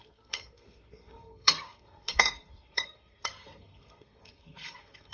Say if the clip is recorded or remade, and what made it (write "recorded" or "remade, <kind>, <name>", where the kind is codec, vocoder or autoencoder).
remade, codec, SNAC